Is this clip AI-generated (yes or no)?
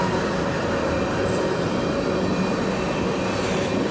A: no